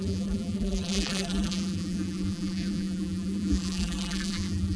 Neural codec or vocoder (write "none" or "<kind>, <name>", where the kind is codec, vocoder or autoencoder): vocoder, BigVGAN v2